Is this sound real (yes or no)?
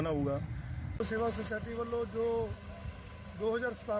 yes